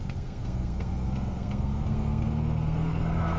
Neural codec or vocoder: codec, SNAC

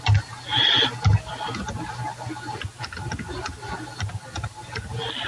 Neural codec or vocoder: none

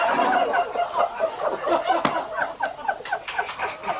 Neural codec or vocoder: none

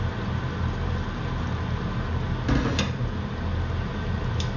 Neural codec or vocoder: none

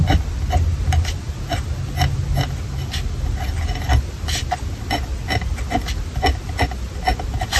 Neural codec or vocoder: none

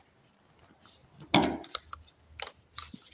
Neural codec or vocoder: none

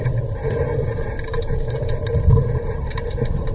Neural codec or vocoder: vocoder, BigVGAN v2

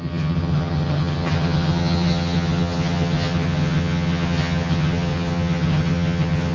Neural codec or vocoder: vocoder, HiFi-GAN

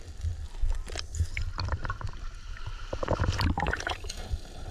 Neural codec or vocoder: none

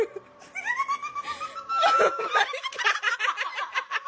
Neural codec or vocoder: none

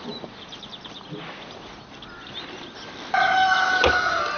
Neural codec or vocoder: none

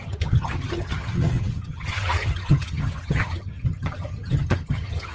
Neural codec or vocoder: vocoder, HiFi-GAN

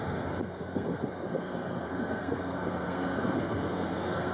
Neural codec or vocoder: codec, SNAC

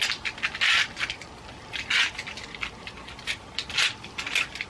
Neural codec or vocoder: none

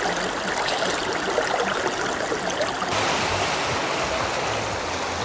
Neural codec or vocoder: none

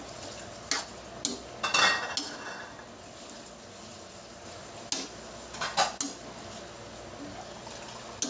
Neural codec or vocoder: none